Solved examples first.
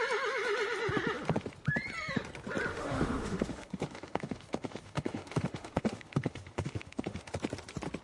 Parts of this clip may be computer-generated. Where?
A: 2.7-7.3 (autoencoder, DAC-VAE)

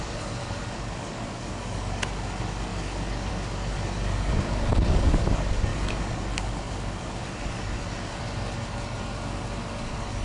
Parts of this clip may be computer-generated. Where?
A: 0.0-10.2 (codec, DAC)